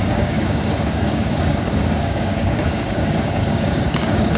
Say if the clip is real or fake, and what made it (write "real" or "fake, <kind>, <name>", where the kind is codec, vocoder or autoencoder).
fake, codec, DAC